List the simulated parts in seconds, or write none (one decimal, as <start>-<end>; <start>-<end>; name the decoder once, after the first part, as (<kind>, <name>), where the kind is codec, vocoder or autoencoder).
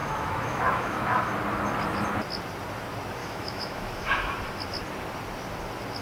0.0-1.3 (autoencoder, DAC-VAE); 3.2-4.3